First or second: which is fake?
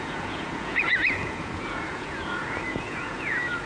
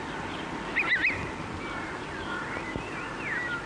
first